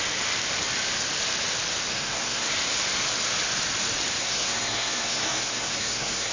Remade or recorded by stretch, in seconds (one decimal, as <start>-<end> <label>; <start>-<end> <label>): 0.0-1.9 recorded; 1.9-2.5 remade; 2.5-4.2 recorded; 4.2-6.3 remade